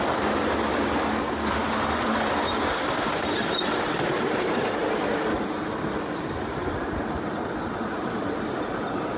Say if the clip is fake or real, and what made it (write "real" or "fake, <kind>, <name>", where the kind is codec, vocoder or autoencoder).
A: real